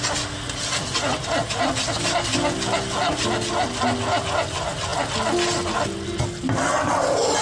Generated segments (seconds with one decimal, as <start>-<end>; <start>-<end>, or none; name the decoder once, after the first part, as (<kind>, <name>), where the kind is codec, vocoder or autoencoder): none